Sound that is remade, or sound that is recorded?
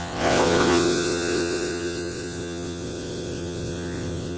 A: remade